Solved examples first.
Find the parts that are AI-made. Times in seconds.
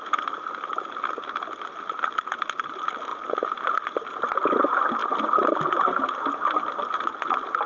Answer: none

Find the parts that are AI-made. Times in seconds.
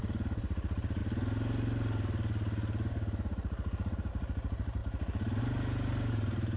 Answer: 0.0-1.0 (vocoder, BigVGAN v2); 4.1-4.8; 5.4-6.6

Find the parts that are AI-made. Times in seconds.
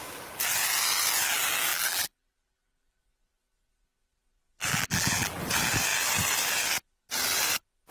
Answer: 1.7-3.0 (vocoder, BigVGAN v2); 4.7-5.4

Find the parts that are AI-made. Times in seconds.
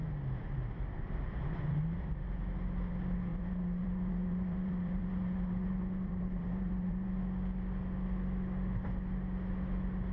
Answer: 3.3-7.2 (vocoder, BigVGAN v2)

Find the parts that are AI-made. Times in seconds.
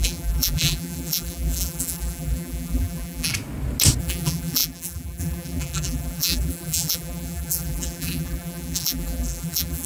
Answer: 0.0-3.3 (vocoder, BigVGAN v2); 4.0-9.9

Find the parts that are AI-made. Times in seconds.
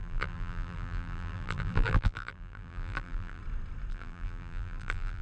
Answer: 0.0-3.4 (vocoder, BigVGAN v2); 3.9-5.2